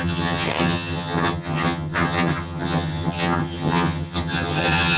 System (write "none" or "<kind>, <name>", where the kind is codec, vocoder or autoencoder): vocoder, HiFi-GAN